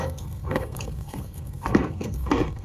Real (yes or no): no